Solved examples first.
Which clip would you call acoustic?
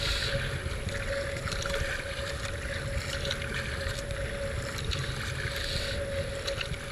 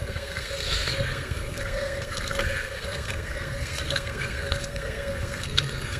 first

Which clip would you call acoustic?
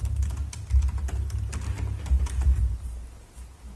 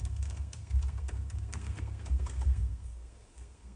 first